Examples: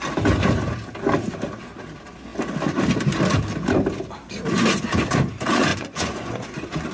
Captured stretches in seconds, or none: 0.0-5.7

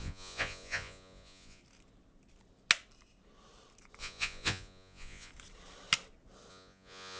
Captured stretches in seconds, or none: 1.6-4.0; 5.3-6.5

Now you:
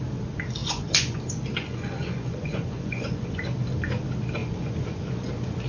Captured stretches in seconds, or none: 0.0-0.6; 1.2-1.6; 3.4-4.4; 5.3-5.7

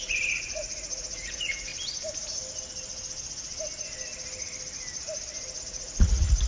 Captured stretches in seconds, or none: 1.7-5.6

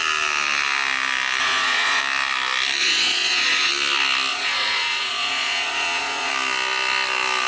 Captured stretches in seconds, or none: 0.0-1.4; 2.0-2.8; 3.7-4.3; 6.3-7.5

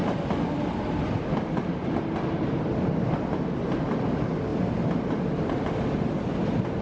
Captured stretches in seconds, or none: 0.0-6.8

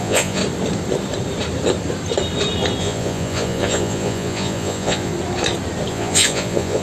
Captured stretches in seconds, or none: 0.4-2.8; 5.1-5.9

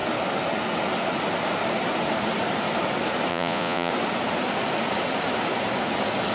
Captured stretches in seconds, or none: 0.0-3.3; 3.9-6.3